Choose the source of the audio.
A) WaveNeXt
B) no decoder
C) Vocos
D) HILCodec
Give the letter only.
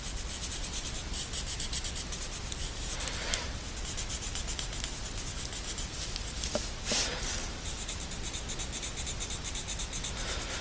B